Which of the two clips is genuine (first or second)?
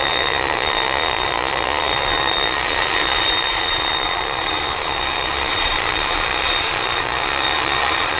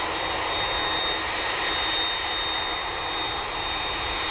second